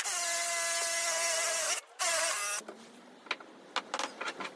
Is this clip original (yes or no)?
yes